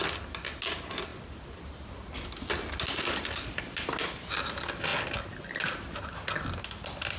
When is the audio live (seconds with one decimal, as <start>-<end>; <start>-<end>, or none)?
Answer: 0.0-7.2